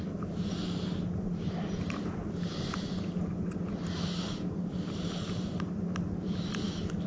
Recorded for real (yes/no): yes